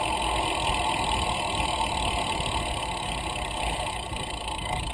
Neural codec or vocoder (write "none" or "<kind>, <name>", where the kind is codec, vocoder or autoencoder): none